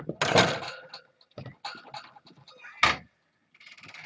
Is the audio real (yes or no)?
yes